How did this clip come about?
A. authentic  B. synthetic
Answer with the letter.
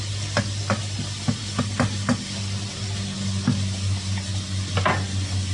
A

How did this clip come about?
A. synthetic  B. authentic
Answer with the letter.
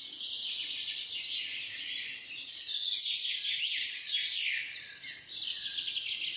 B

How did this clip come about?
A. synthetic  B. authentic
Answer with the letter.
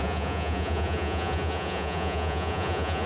A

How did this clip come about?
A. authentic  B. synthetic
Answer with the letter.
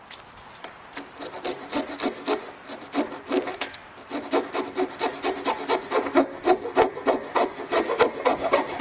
A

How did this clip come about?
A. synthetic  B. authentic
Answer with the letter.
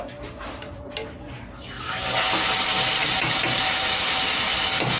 B